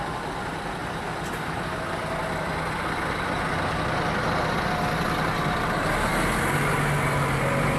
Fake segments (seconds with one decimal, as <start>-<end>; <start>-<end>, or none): none